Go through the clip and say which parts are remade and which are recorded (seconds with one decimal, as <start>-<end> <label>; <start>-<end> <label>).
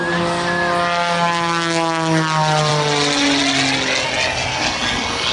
0.0-5.3 recorded